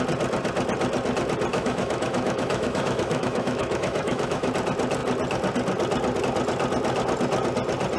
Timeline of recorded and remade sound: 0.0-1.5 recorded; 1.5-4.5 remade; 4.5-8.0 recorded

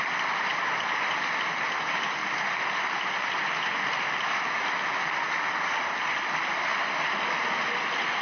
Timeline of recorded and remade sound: 0.0-2.2 remade; 2.2-4.0 recorded; 4.0-6.7 remade; 6.7-7.2 recorded; 7.2-8.2 remade

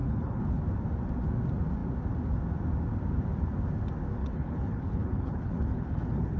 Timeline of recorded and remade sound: 0.0-0.6 remade; 0.6-4.2 recorded; 4.2-6.4 remade

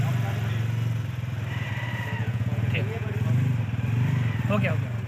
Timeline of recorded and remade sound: 0.0-2.2 recorded; 2.2-3.1 remade; 3.1-5.1 recorded

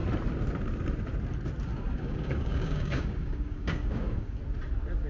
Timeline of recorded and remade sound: 0.0-1.7 recorded; 1.7-4.4 remade; 4.4-5.1 recorded

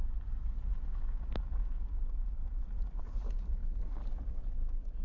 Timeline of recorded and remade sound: 0.0-5.0 recorded

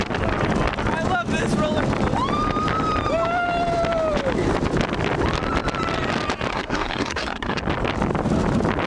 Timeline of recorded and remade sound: 0.0-6.5 recorded; 6.5-7.6 remade; 7.6-8.9 recorded

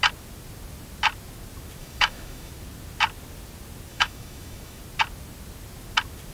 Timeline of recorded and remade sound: 0.0-1.8 recorded; 1.8-2.5 remade; 2.5-3.9 recorded; 3.9-4.8 remade; 4.8-6.3 recorded